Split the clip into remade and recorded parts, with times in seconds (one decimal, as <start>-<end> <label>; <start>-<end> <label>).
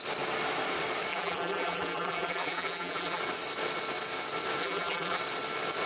0.0-1.1 recorded; 1.1-3.2 remade; 3.2-4.6 recorded; 4.6-5.2 remade; 5.2-5.9 recorded